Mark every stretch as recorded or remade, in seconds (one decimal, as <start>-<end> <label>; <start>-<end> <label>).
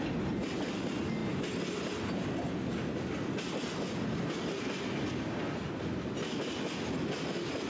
0.0-7.7 recorded